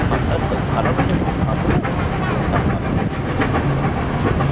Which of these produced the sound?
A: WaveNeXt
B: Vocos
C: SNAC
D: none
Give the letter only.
D